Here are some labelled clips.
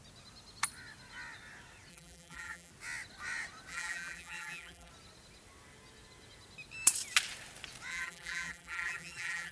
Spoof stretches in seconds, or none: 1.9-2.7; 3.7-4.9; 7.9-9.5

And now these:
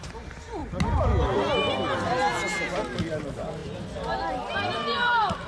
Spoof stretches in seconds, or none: 0.0-0.6; 3.2-5.5

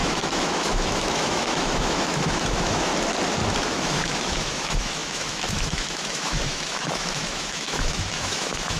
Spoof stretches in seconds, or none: 0.0-2.9; 3.6-8.8